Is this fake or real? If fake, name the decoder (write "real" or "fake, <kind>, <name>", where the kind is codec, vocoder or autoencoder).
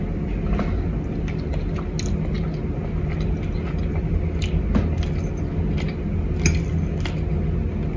real